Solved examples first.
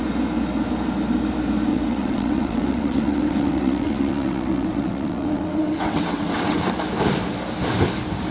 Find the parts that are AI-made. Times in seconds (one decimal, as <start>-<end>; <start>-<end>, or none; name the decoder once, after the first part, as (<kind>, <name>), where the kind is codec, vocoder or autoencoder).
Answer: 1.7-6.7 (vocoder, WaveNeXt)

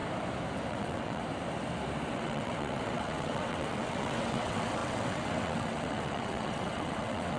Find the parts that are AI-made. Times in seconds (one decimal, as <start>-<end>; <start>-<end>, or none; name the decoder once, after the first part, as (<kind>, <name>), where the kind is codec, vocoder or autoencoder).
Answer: 0.7-1.2 (vocoder, WaveNeXt); 2.1-7.4

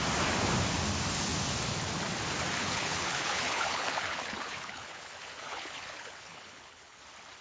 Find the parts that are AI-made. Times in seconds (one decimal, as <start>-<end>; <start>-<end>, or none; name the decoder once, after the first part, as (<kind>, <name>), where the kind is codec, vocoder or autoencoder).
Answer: 2.6-7.0 (codec, HILCodec)